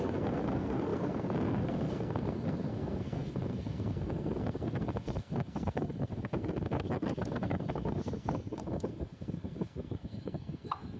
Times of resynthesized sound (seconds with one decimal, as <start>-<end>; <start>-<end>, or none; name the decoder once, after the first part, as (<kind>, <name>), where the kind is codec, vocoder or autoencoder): 0.0-11.0 (codec, SNAC)